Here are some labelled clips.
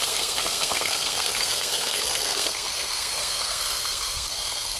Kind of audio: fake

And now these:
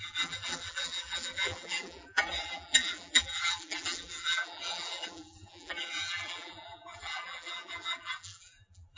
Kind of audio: fake